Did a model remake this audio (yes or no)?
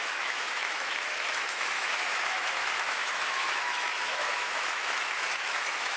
yes